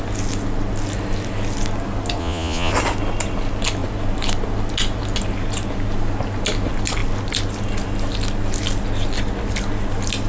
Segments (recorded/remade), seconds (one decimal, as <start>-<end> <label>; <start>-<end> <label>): 0.0-2.2 recorded; 2.2-2.7 remade; 2.7-10.3 recorded